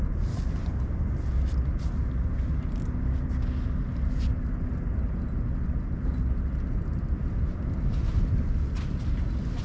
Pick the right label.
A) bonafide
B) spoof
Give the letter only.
A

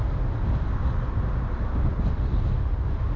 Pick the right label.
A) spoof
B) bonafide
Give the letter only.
B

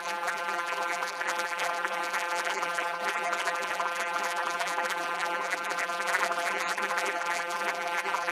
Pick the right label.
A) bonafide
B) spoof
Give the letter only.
B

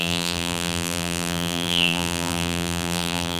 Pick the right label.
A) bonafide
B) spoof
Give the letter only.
B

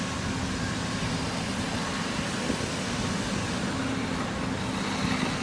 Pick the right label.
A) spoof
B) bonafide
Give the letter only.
B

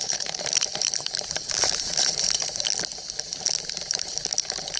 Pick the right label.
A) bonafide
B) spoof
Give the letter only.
B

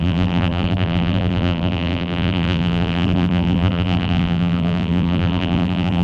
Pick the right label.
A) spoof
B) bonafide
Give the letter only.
A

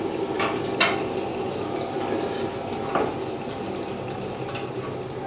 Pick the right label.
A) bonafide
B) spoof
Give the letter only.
A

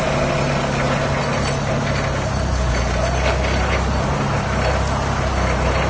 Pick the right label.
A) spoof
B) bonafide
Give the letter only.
B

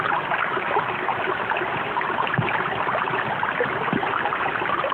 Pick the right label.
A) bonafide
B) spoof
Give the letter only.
A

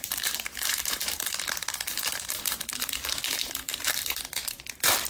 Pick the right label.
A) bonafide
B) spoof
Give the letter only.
B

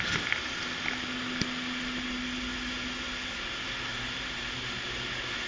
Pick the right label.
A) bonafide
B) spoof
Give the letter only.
A